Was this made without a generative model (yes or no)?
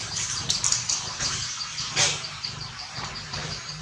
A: no